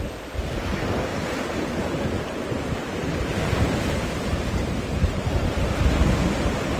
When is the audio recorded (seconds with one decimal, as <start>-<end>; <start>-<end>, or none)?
0.0-1.1; 5.2-6.8